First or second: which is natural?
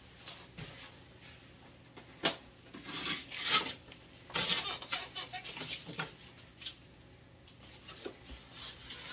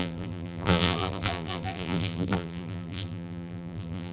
first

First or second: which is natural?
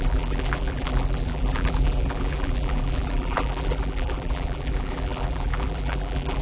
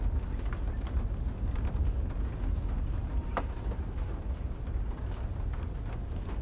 second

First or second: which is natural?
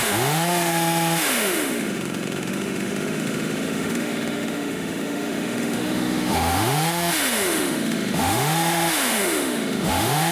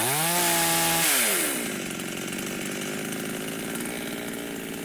second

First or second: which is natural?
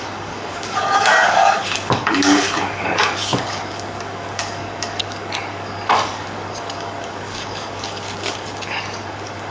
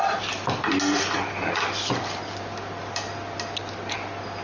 second